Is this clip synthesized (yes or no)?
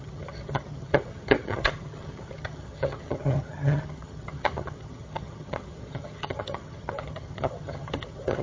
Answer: yes